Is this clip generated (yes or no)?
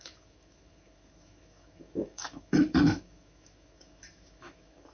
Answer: yes